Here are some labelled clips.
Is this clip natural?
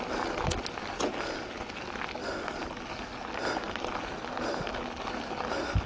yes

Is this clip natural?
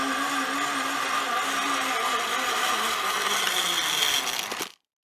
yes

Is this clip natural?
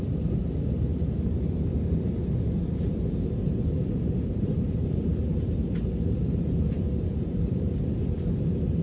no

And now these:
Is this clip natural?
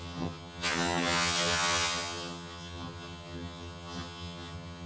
no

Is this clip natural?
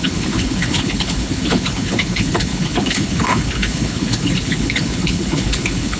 no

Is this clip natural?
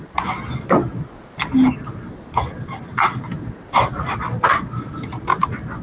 yes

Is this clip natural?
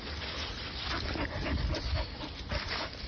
yes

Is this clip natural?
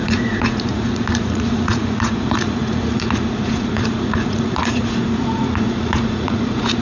no